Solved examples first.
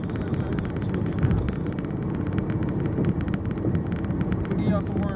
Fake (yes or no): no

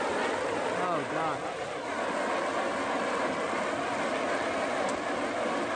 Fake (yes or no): no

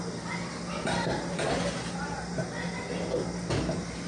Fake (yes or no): no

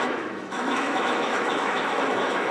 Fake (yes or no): yes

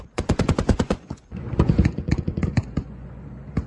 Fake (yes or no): yes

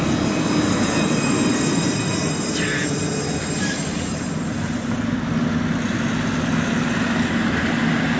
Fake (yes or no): no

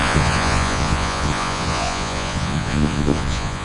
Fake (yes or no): yes